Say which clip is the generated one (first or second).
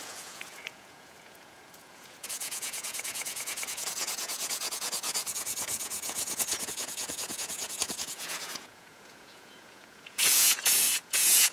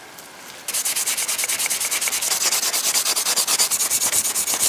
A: first